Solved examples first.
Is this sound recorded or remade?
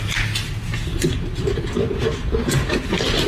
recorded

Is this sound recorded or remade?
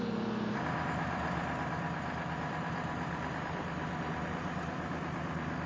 recorded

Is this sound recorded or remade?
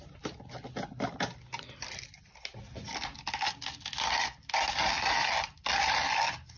recorded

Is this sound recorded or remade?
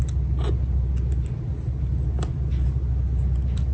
recorded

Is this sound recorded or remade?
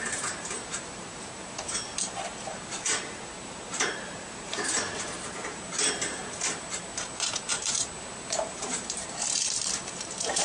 remade